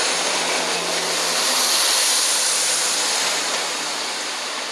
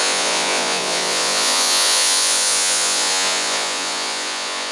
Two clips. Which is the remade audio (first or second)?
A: second